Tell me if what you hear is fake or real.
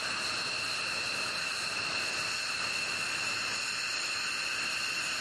real